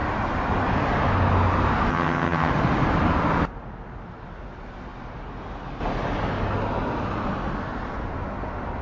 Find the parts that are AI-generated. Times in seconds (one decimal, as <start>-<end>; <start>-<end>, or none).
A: 1.9-2.5